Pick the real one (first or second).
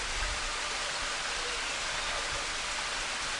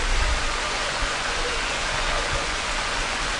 first